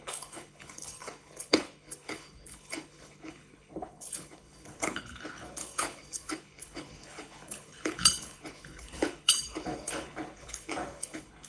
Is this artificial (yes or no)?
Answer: yes